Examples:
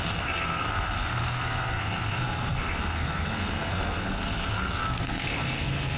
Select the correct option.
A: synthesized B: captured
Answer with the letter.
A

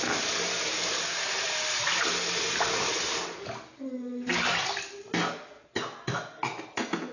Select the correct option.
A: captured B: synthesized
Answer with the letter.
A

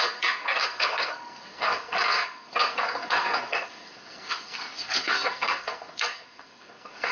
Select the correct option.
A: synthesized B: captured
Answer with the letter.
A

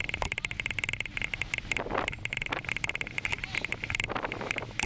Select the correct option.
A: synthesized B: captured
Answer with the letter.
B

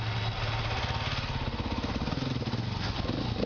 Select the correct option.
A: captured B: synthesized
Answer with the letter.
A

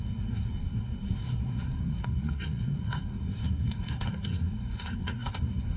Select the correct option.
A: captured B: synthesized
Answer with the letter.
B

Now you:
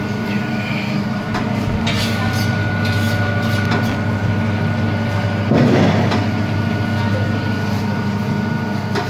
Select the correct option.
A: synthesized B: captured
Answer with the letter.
B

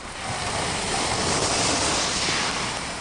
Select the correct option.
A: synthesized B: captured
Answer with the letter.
B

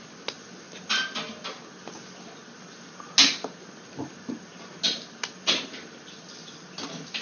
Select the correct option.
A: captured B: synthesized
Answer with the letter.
A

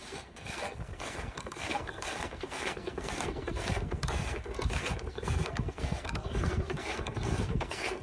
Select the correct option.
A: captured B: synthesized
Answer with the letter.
B